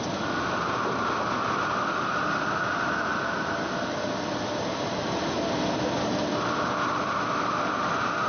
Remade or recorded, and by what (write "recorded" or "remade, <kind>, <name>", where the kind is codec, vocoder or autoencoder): recorded